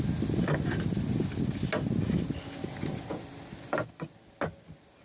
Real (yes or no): yes